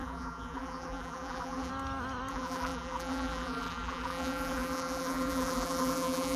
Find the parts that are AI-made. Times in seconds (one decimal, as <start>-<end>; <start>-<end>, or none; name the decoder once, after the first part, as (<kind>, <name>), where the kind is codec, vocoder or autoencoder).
0.0-1.7 (vocoder, BigVGAN v2); 2.3-6.4